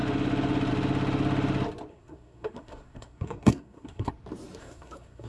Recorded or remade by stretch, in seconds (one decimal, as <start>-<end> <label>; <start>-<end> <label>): 0.0-1.9 recorded; 1.9-4.1 remade; 4.1-4.6 recorded; 4.6-5.3 remade